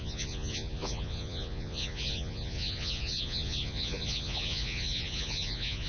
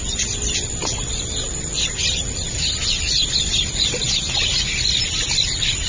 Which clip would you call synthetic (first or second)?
first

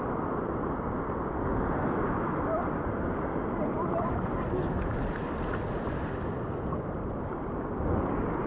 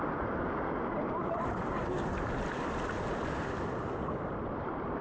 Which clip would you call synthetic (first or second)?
second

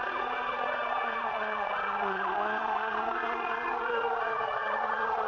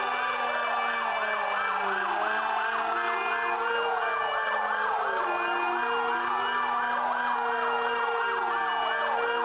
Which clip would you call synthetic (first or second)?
first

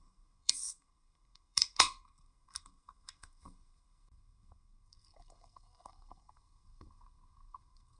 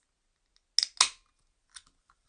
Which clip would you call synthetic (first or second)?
first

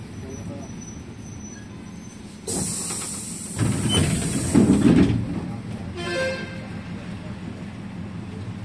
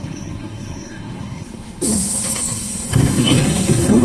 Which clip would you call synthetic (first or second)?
second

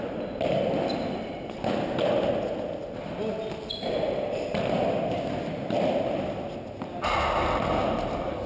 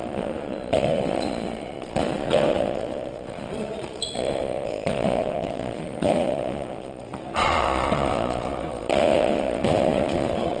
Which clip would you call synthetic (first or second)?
second